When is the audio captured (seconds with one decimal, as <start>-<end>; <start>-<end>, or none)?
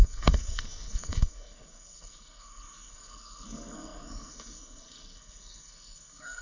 none